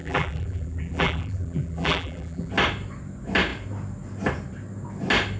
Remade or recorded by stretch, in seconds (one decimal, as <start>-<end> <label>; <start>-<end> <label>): 0.0-2.5 remade; 2.5-5.4 recorded